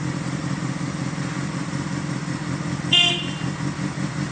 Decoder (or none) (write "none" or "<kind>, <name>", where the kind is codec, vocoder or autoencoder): none